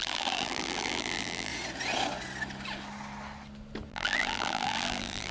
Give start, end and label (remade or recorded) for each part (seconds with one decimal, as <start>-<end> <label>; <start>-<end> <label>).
0.0-1.5 remade; 1.5-3.9 recorded; 3.9-5.3 remade